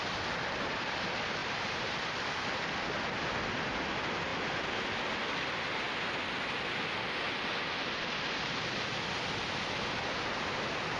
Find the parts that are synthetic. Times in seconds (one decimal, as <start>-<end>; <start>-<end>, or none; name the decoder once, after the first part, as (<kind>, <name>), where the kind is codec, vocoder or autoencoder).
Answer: 1.4-2.1 (vocoder, BigVGAN v2)